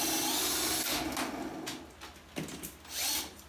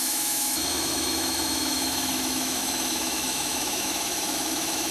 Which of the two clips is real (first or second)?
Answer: first